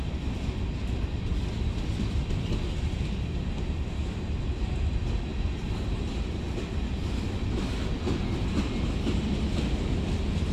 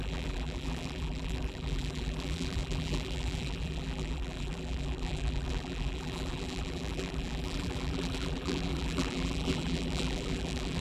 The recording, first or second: first